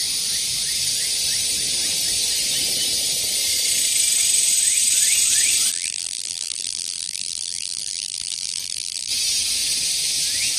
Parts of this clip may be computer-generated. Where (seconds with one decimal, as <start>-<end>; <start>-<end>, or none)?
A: 5.7-9.1